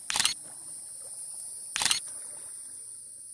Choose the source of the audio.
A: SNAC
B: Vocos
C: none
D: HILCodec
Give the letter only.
C